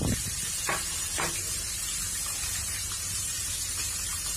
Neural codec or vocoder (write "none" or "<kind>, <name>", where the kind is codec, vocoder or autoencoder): vocoder, BigVGAN v2